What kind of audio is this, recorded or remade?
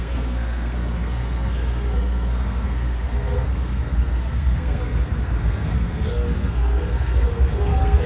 remade